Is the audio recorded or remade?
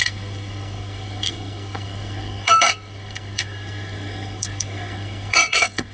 remade